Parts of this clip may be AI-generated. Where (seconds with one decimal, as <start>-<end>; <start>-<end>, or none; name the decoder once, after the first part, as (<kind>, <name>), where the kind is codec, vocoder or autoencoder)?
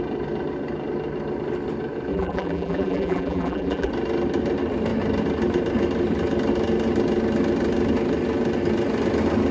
2.1-3.9 (vocoder, BigVGAN v2)